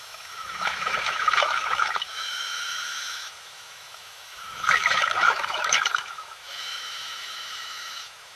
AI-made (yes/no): yes